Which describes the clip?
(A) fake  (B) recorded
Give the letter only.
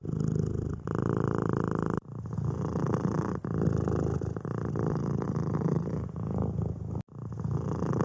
B